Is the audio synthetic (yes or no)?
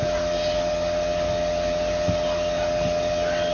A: no